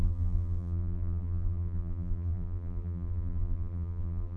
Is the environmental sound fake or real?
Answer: fake